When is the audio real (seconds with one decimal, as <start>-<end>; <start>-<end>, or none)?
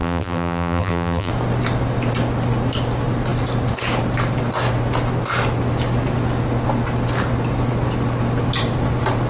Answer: 1.3-9.3